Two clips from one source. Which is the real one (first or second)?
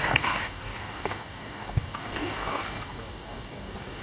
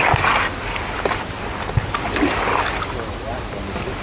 second